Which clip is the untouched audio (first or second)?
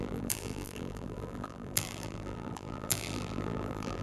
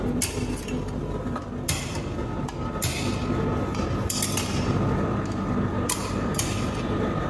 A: second